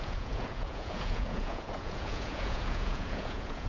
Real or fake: fake